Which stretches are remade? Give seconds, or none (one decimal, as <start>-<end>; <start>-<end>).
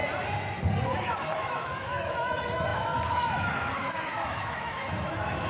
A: 1.0-5.5